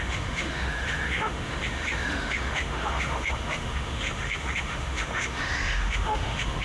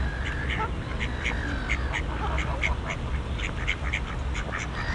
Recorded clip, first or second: second